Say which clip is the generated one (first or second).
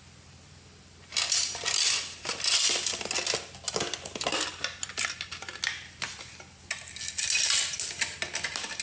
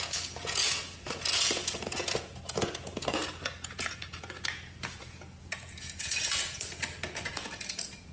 second